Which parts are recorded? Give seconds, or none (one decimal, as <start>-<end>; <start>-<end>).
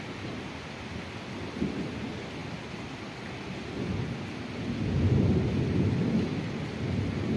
0.0-7.4